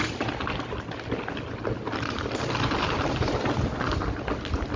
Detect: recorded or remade recorded